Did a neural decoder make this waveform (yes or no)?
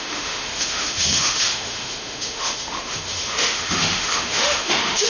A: yes